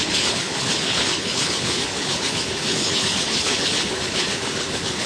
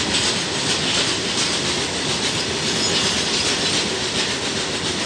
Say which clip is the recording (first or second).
second